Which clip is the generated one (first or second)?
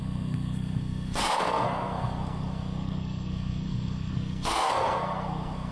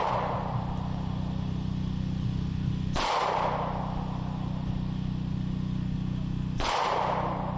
first